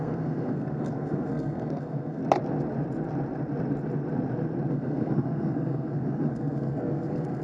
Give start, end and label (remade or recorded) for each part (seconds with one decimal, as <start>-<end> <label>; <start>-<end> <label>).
0.0-2.2 remade; 2.2-4.7 recorded; 4.7-7.4 remade